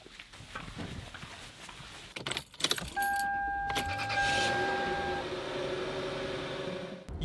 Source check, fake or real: real